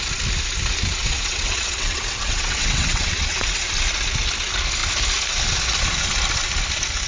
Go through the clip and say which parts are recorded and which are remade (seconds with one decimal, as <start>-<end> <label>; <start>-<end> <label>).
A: 0.0-1.0 recorded; 1.0-3.7 remade; 3.7-7.1 recorded